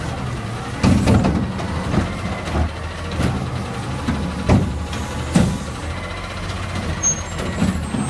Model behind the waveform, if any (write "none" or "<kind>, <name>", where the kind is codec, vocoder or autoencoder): none